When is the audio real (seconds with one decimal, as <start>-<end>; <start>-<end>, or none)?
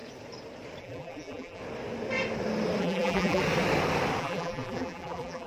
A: 0.0-0.8; 1.6-2.8; 3.4-4.2